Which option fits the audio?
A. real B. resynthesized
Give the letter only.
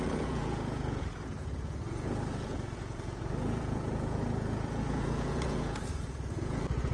B